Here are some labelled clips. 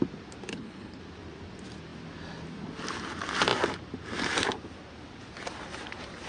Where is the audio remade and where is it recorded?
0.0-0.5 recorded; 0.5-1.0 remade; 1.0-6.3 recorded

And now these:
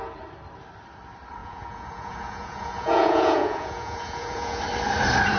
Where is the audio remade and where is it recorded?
0.0-1.4 recorded; 1.4-4.6 remade; 4.6-5.4 recorded

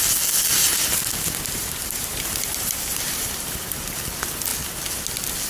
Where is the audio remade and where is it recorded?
0.0-0.6 recorded; 0.6-3.9 remade; 3.9-5.5 recorded